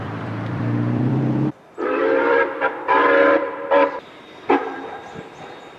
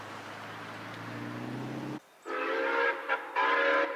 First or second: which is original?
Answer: second